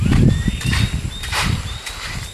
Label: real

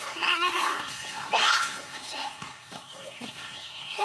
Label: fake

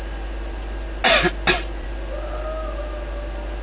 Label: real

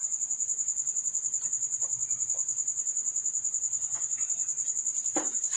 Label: real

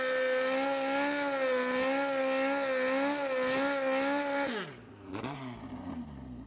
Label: real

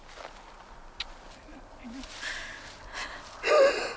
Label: real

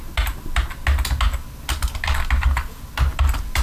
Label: real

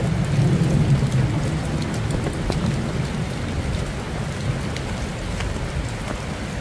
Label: real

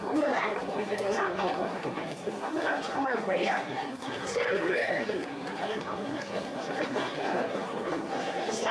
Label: fake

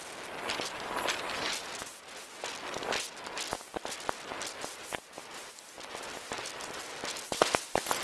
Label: real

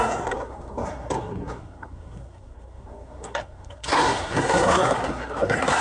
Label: fake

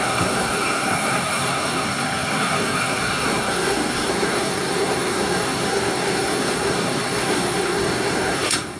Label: fake